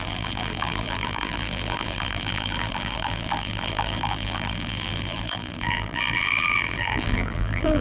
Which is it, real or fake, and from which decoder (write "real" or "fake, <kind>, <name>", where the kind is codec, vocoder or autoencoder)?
fake, vocoder, BigVGAN v2